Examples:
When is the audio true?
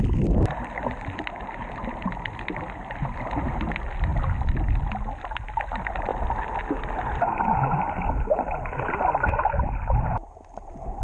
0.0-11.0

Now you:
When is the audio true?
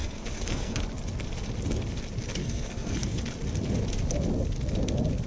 0.8-2.4; 3.2-5.3